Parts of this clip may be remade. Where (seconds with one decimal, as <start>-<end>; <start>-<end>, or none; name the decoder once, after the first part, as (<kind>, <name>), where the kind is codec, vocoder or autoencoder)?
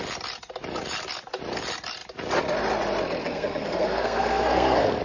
3.2-5.0 (codec, SNAC)